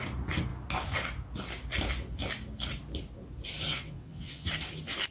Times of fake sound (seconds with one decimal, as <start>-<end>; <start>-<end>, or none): 3.7-4.5